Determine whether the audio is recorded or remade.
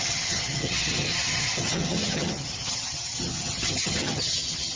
remade